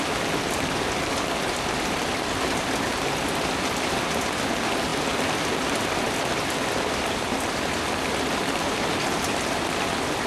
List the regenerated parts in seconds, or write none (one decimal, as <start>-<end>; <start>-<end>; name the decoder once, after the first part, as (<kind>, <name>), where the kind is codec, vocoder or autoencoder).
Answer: none

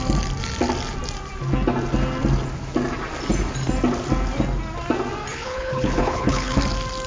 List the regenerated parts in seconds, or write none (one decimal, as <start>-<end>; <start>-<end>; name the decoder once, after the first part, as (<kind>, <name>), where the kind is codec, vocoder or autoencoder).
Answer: 5.3-6.6 (codec, HILCodec)